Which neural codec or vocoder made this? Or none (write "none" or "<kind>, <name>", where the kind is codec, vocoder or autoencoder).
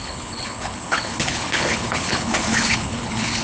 codec, HILCodec